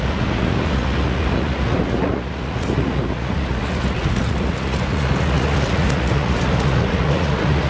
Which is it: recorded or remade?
remade